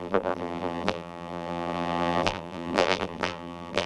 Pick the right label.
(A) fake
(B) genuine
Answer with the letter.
A